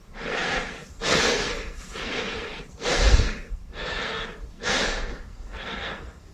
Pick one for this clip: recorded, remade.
remade